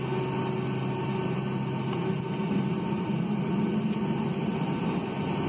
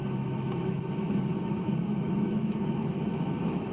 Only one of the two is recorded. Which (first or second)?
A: first